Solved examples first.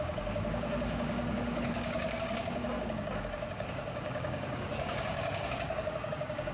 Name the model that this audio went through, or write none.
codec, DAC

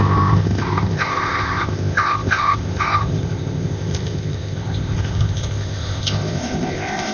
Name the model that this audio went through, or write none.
codec, ZipCodec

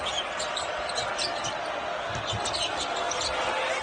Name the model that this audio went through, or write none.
none